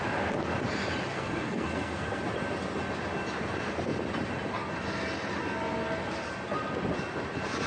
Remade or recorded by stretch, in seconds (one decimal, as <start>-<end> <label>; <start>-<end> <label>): 0.0-1.1 recorded; 1.1-2.2 remade; 2.2-7.7 recorded